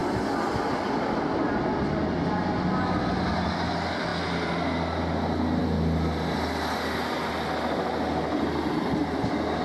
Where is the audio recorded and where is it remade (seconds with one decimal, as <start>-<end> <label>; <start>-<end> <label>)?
0.0-9.6 recorded